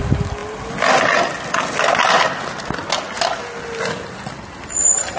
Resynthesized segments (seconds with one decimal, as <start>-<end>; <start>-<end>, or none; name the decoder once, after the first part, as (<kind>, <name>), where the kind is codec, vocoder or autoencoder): none